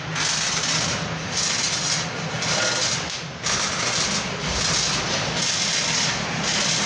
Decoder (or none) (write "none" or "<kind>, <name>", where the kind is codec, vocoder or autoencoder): none